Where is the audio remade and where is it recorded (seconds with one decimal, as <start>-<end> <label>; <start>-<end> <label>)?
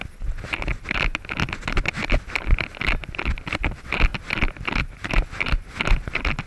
0.0-6.5 recorded